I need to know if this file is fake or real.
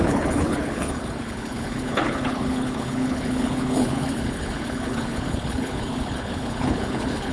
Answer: fake